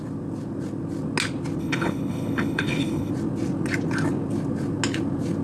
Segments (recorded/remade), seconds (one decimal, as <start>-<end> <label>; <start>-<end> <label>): 0.0-1.6 recorded; 1.6-3.1 remade; 3.1-5.4 recorded